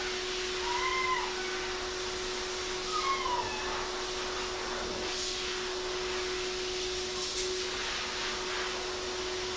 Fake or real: real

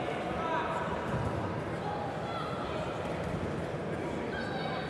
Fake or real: real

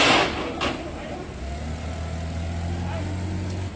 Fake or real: real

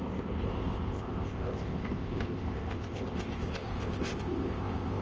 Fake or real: fake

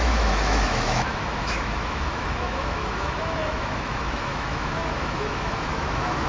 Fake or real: fake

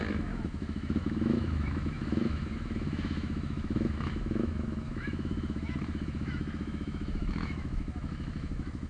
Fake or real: fake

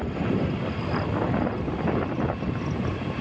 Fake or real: real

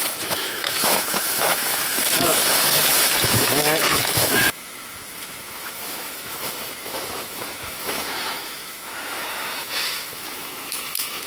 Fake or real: fake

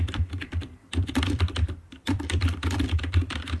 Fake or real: fake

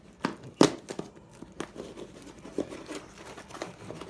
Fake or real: real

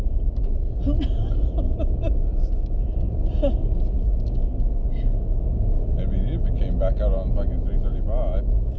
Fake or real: real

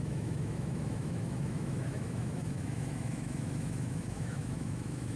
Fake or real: fake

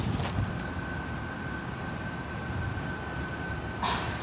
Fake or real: real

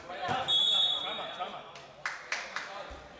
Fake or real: real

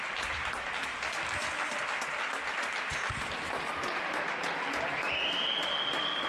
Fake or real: real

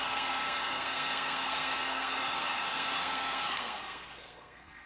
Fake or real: fake